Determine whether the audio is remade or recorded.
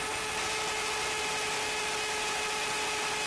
recorded